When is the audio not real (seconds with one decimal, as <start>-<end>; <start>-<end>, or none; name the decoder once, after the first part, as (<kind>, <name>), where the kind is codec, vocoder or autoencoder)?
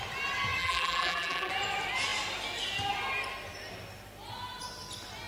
0.6-1.5 (vocoder, BigVGAN v2)